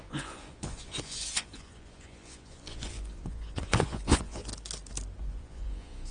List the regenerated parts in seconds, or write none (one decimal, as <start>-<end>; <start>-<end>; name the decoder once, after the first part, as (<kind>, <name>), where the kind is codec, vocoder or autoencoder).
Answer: 0.0-4.5 (vocoder, Vocos); 5.2-6.1